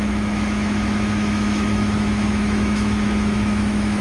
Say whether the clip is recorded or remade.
remade